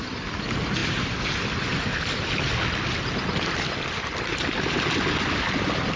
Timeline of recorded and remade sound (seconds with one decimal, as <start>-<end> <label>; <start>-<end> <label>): 0.0-6.0 recorded